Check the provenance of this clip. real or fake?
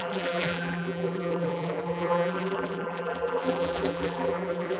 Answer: fake